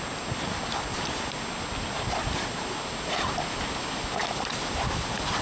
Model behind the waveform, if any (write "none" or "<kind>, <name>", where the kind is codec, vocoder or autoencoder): none